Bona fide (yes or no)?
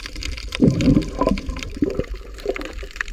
no